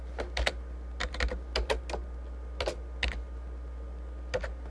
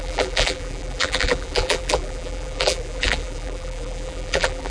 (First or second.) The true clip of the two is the first